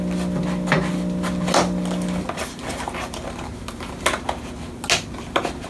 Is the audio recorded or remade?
recorded